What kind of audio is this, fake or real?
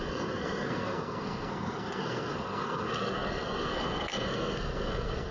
fake